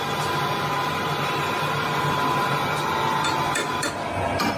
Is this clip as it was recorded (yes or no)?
yes